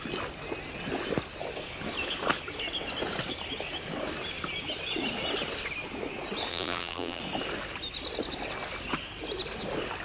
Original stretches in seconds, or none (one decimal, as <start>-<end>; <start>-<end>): 0.0-6.5; 7.2-10.0